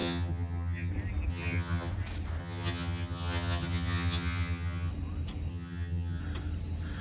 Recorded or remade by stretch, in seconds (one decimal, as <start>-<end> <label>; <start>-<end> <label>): 0.0-0.9 remade; 0.9-1.3 recorded; 1.3-1.9 remade; 1.9-2.4 recorded; 2.4-4.9 remade; 4.9-5.5 recorded; 5.5-6.2 remade; 6.2-7.0 recorded